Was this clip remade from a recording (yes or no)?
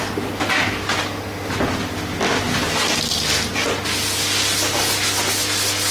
no